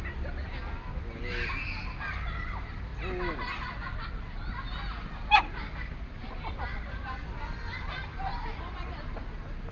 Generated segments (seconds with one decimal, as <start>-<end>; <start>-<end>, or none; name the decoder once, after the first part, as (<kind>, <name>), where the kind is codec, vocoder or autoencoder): none